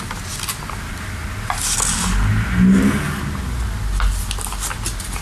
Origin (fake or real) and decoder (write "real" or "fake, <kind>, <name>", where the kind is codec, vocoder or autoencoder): real